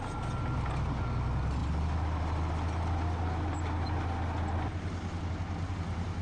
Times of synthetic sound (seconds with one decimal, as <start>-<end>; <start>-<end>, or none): none